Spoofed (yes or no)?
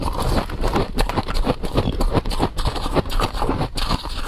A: yes